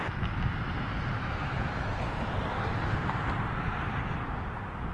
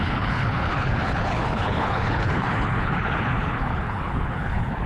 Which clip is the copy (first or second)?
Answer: second